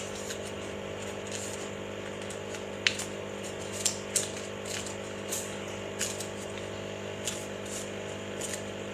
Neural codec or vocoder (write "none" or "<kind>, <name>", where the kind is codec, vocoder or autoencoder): none